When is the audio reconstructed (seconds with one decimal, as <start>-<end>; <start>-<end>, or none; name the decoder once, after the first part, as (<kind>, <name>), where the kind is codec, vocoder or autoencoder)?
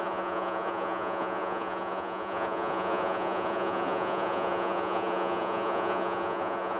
0.0-6.8 (vocoder, Vocos)